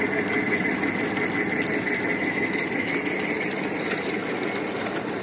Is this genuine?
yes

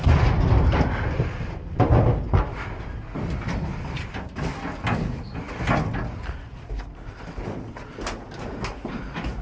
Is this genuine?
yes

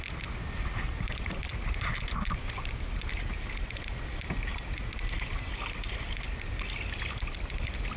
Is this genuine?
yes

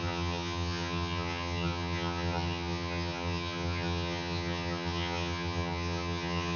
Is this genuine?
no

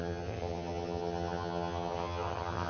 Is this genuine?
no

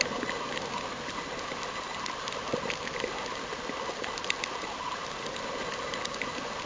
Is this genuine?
yes